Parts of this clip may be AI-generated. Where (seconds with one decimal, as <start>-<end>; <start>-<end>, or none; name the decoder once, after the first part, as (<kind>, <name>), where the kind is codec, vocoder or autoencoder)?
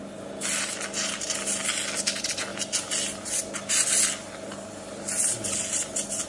none